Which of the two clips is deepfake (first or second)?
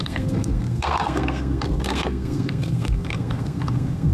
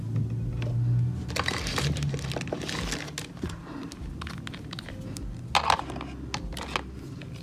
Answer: first